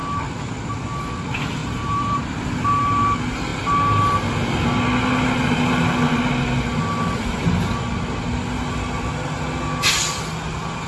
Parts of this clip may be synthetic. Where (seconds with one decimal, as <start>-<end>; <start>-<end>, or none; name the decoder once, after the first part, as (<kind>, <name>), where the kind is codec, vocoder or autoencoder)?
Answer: 1.6-2.2 (vocoder, BigVGAN v2)